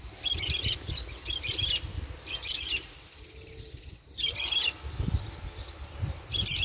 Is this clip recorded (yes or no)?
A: yes